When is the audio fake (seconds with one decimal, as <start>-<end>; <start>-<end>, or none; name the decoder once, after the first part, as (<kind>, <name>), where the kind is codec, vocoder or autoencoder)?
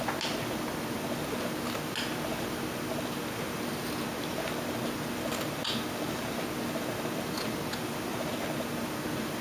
none